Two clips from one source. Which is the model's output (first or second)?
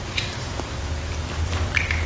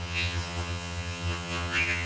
second